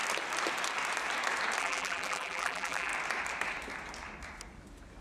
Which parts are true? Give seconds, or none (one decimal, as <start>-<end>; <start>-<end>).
0.0-1.6; 2.9-5.0